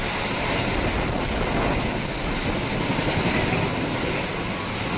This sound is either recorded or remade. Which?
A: recorded